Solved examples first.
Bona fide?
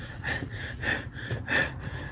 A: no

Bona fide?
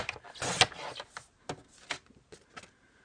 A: yes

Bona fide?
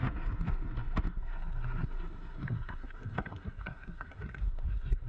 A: no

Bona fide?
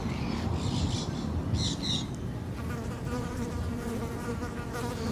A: yes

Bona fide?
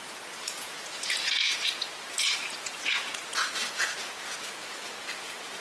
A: no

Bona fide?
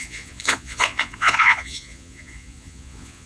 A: no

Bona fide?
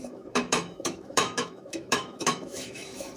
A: no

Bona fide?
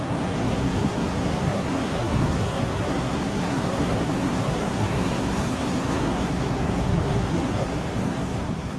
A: no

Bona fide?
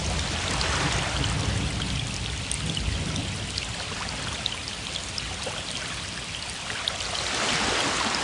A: yes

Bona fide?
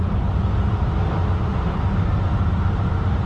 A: no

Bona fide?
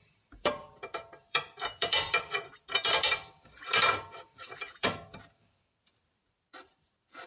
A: no